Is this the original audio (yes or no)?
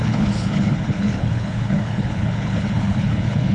no